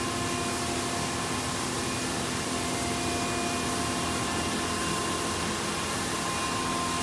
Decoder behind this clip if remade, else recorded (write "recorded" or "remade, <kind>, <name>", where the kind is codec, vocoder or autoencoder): recorded